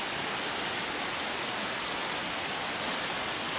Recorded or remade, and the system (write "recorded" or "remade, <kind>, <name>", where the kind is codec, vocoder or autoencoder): recorded